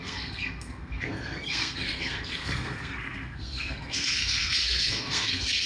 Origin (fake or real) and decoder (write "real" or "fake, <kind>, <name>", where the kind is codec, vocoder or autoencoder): fake, codec, SNAC